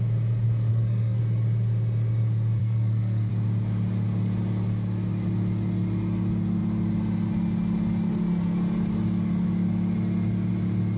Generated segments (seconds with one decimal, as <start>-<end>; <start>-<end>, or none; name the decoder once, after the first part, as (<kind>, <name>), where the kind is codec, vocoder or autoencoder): 0.7-1.2 (codec, SNAC); 2.6-3.3